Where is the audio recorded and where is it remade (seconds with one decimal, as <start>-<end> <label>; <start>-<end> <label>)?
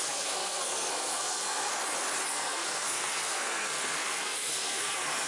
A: 0.0-1.7 remade; 1.7-2.3 recorded; 2.3-5.3 remade